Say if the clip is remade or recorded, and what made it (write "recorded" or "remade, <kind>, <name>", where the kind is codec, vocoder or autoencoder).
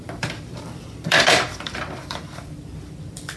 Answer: remade, vocoder, BigVGAN v2